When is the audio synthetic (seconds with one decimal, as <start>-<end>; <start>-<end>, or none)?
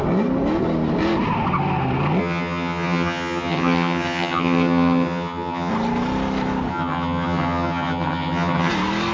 2.2-5.7; 6.7-8.7